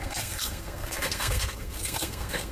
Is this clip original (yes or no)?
no